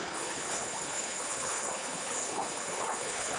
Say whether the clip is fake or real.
fake